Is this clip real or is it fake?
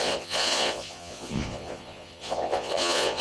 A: fake